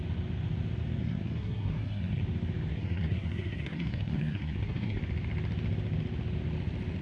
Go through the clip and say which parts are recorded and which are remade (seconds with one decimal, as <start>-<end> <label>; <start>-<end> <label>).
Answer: 0.0-1.0 recorded; 1.0-2.2 remade; 2.2-2.7 recorded; 2.7-5.0 remade; 5.0-7.0 recorded